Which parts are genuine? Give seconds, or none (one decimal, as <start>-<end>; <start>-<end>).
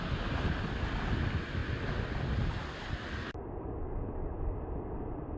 0.0-5.4